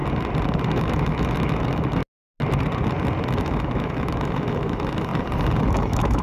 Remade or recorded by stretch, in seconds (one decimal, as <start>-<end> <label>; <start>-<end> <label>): 0.0-0.7 recorded; 0.7-2.0 remade; 2.0-3.4 recorded; 3.4-5.1 remade; 5.1-5.7 recorded; 5.7-6.2 remade